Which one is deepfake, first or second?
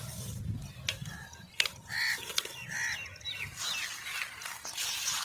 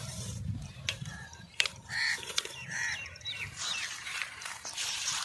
second